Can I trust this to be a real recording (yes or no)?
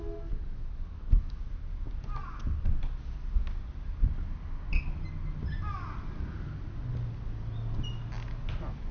yes